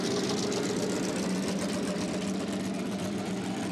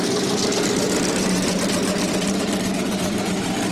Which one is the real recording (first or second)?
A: first